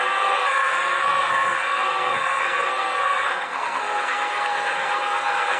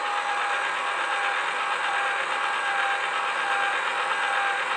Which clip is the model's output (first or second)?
first